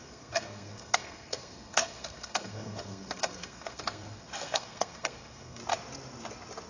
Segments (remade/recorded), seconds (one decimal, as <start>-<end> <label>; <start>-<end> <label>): 0.0-5.6 remade; 5.6-6.7 recorded